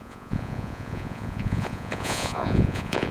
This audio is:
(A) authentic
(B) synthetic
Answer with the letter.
B